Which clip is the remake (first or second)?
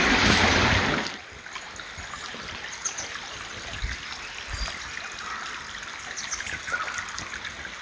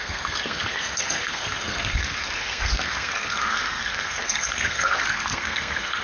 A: second